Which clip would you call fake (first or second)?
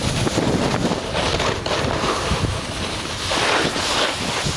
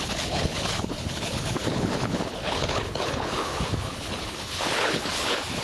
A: second